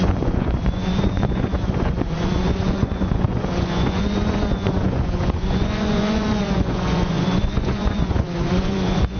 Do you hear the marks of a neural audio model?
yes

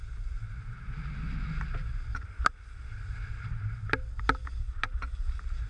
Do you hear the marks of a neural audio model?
no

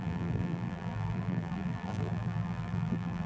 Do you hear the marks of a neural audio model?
yes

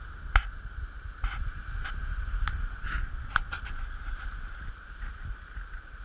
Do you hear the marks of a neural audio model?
no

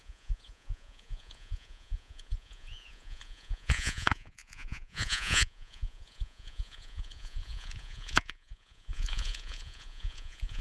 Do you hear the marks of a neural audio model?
yes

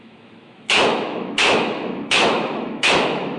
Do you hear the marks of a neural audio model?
yes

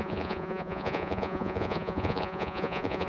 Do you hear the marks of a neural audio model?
yes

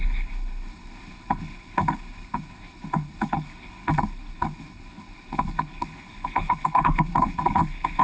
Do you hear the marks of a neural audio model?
yes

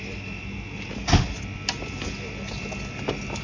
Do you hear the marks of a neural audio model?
no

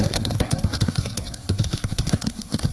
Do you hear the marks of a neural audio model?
yes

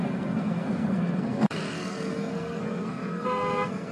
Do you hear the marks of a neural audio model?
yes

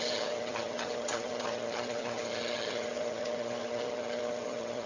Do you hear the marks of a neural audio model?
yes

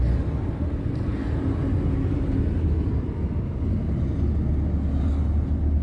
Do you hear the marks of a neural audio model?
no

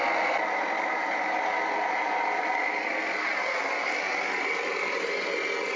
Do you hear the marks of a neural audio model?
no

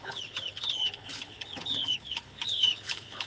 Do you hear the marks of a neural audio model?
yes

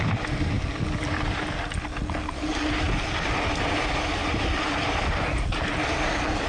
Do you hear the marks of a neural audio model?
no